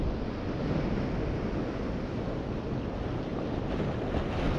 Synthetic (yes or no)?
no